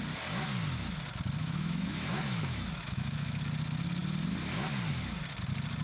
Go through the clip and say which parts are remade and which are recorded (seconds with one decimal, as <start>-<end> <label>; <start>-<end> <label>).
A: 0.0-1.4 recorded; 1.4-3.4 remade; 3.4-5.8 recorded